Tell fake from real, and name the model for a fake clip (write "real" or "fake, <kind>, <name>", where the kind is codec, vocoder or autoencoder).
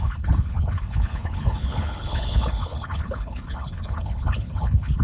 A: fake, codec, HILCodec